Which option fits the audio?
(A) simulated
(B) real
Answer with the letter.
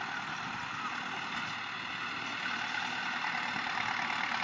B